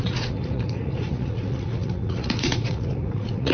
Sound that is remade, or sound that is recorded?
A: remade